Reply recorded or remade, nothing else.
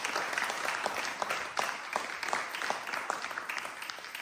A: recorded